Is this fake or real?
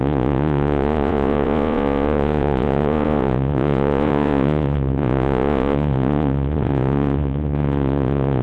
fake